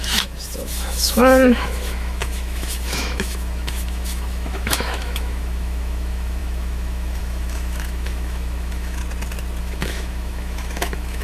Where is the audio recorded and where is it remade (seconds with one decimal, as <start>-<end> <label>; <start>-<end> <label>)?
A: 0.0-9.0 remade; 9.0-9.6 recorded; 9.6-11.2 remade